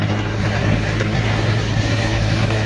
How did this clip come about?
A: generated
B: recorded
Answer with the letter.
A